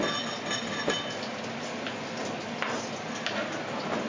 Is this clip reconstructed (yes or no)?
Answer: no